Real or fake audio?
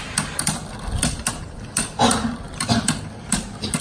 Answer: real